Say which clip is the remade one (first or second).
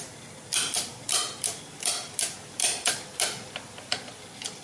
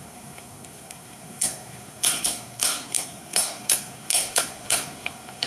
second